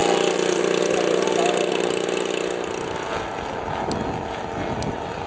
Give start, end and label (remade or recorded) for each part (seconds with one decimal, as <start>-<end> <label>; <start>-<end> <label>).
0.0-5.3 recorded